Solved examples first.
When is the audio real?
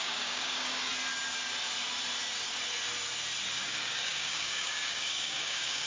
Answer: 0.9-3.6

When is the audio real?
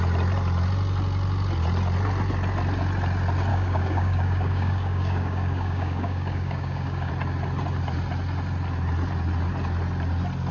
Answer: 0.0-3.5; 7.1-10.5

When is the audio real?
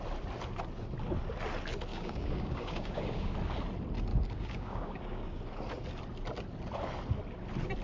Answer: 0.0-1.9; 3.3-4.1; 5.4-7.8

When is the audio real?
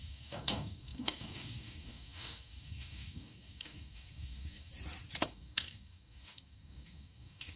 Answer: 4.7-5.3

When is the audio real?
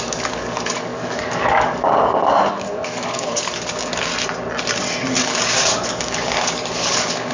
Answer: 4.1-5.2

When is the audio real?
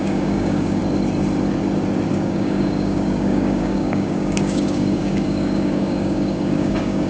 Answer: 0.8-2.1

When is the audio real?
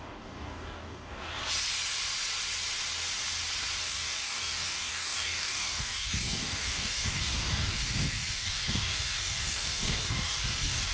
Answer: 1.4-3.8